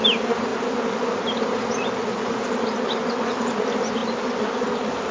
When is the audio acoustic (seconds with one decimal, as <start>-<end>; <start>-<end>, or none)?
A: 0.0-5.1